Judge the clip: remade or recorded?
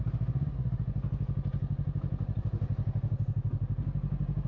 recorded